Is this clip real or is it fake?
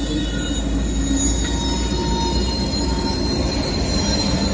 real